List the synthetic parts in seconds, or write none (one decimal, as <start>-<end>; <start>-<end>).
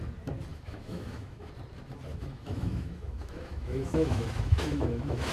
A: 0.5-1.5; 2.1-5.3